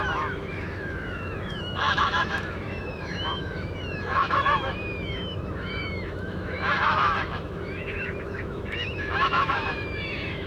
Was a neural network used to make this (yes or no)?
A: yes